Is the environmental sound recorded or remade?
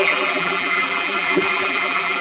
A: remade